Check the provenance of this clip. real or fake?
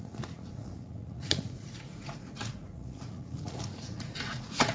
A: fake